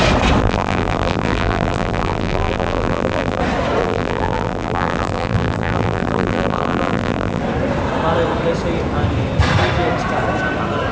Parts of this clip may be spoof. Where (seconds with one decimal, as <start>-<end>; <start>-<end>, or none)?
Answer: 0.4-3.4; 3.8-7.4